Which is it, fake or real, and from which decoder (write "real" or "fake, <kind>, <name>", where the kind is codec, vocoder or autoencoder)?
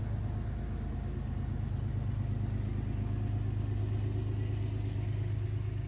real